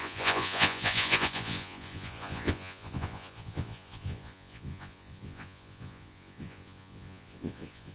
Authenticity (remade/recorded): remade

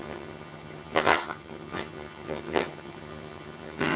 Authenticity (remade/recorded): remade